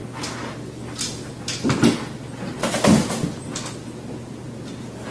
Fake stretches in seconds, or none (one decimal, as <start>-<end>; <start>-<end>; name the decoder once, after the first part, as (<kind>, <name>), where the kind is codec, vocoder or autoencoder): none